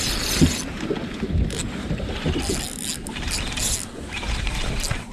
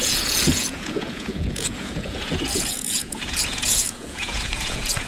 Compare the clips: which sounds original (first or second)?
first